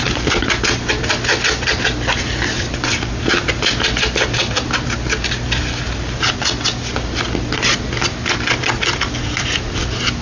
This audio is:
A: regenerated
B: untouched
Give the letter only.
B